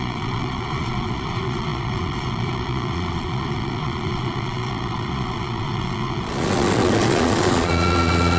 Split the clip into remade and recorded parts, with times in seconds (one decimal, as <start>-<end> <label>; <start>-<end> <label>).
0.0-8.4 remade